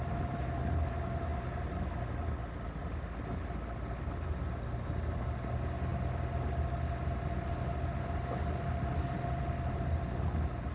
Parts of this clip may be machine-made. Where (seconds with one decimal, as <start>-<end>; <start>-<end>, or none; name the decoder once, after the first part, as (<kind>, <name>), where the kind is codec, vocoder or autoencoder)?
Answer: none